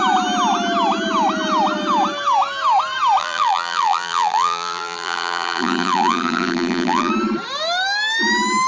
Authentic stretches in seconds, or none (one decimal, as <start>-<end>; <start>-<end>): 0.0-3.2; 7.1-8.7